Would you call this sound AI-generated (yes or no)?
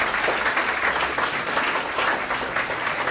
no